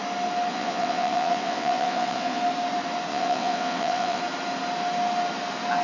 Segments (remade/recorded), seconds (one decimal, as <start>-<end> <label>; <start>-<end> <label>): 0.0-0.5 recorded; 0.5-2.4 remade; 2.4-3.1 recorded; 3.1-4.2 remade; 4.2-5.8 recorded